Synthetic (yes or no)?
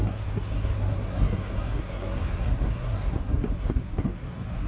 yes